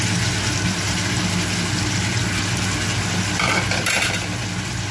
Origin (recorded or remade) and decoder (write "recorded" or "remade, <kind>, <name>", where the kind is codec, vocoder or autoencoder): recorded